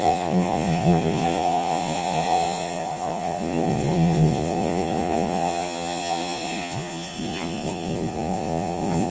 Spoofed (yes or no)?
yes